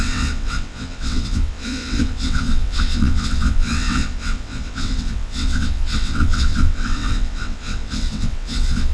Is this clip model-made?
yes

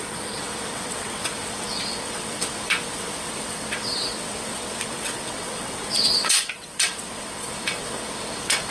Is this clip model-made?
yes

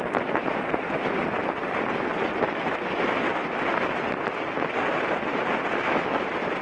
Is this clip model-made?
no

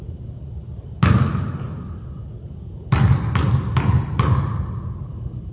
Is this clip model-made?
no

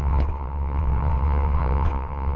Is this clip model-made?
yes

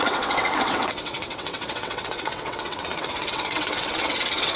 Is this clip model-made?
yes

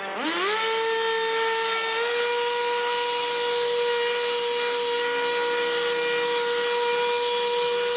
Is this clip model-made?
no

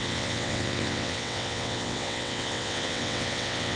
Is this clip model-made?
yes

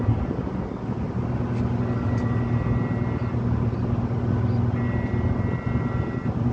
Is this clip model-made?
no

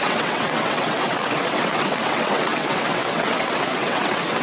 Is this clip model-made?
yes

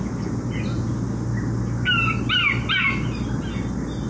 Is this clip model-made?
no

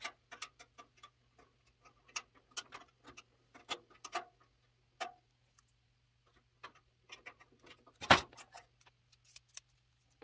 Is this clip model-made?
no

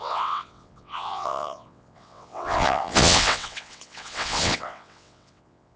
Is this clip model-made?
yes